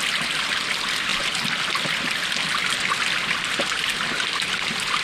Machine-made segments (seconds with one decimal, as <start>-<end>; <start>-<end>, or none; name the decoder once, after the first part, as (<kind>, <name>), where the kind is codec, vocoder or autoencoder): none